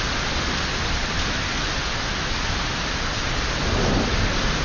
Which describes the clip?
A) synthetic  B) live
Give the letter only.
B